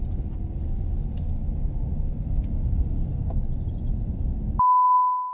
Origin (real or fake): real